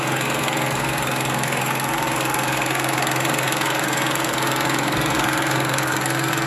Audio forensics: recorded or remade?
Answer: remade